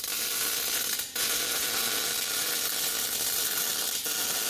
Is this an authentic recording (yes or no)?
yes